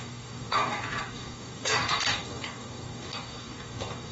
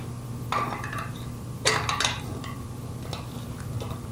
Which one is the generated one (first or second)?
first